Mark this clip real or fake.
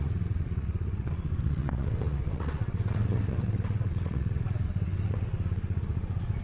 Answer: fake